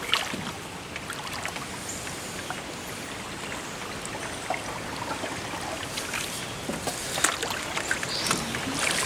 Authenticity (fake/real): real